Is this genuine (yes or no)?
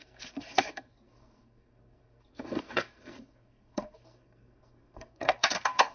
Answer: no